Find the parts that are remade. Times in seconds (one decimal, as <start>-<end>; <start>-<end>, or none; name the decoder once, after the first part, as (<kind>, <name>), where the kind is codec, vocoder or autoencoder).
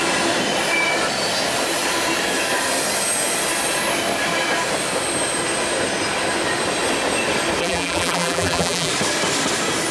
7.6-8.9 (vocoder, BigVGAN v2)